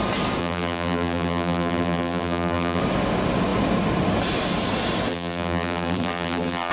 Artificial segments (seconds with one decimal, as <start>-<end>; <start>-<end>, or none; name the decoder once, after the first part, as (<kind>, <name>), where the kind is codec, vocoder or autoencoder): 0.4-2.8 (vocoder, BigVGAN v2); 5.1-6.7